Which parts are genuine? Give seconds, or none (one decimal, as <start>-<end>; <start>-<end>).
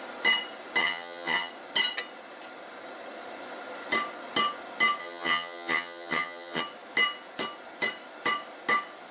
0.0-0.8; 1.5-5.0; 6.6-9.1